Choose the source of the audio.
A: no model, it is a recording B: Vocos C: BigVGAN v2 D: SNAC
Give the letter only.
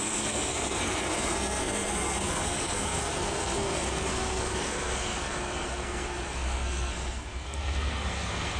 D